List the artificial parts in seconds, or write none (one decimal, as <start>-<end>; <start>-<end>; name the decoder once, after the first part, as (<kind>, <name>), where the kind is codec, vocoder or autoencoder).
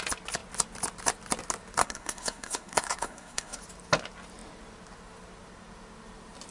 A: 1.8-3.6 (codec, SNAC)